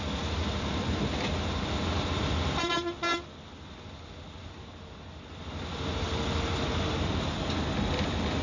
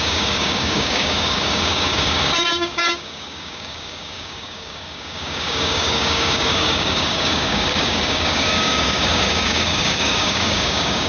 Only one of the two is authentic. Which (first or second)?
first